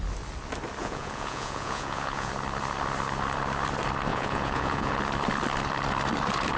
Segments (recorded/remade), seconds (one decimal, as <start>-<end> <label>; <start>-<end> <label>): 0.0-0.8 recorded; 0.8-2.3 remade; 2.3-4.1 recorded; 4.1-4.9 remade; 4.9-6.6 recorded